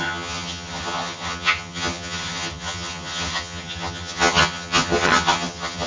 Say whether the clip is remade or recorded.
remade